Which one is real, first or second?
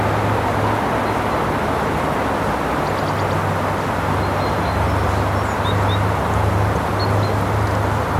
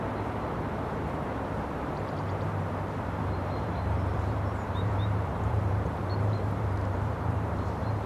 first